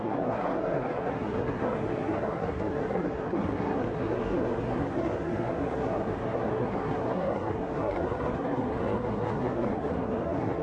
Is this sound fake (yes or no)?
yes